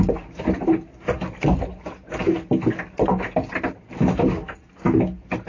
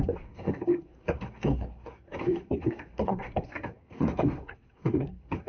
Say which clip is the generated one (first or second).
second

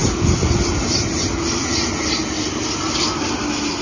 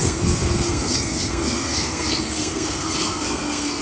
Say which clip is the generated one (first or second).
second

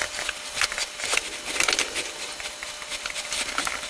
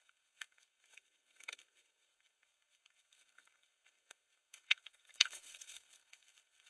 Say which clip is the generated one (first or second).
second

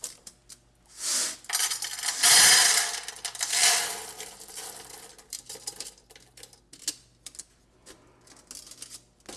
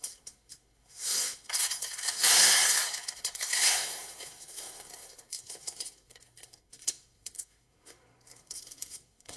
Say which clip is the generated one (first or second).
second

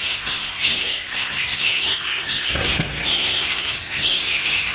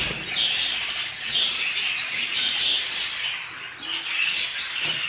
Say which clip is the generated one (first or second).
first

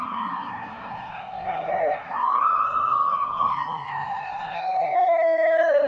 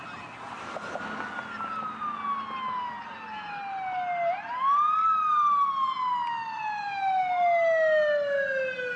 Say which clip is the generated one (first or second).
first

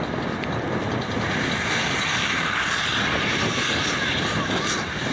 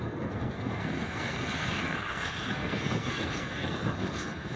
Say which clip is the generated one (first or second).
second